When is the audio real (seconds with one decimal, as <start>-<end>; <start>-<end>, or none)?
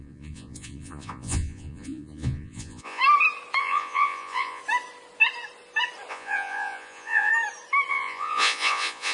3.0-3.6; 4.6-6.1; 7.3-7.9